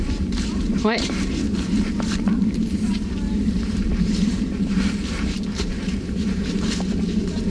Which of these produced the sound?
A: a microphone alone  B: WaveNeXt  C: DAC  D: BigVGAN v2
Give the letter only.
D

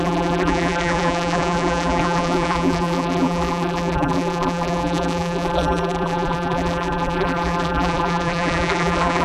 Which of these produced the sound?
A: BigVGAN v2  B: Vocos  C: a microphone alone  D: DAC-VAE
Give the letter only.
A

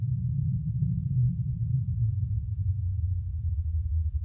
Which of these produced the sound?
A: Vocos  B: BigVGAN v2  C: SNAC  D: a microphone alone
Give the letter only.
B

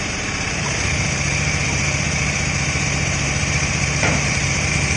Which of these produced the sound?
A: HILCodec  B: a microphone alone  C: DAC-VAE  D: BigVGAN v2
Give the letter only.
D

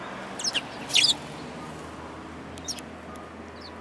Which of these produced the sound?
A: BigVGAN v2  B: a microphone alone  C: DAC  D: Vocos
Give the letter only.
B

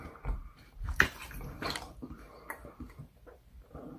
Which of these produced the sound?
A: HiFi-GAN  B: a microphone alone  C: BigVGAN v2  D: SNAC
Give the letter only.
C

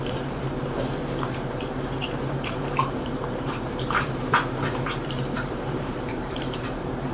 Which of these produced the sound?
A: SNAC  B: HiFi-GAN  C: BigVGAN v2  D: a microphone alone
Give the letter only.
C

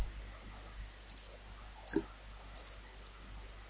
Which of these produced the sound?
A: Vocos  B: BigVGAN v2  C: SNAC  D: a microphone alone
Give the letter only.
D